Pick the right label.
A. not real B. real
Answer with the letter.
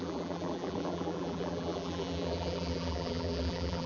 A